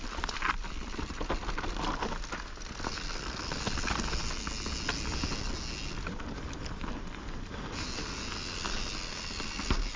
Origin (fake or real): real